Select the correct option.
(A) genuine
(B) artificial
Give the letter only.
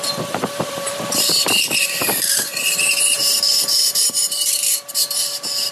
B